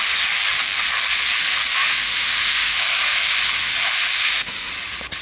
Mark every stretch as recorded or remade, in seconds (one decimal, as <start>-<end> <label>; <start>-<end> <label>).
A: 0.0-1.7 recorded; 1.7-4.7 remade; 4.7-5.2 recorded